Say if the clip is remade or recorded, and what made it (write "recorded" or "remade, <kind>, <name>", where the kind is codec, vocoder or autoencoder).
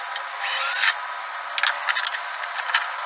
recorded